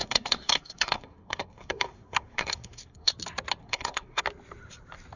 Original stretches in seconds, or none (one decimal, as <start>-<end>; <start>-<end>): 3.1-3.6; 4.2-5.2